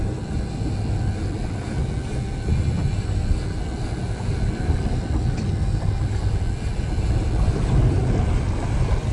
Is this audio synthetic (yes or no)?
no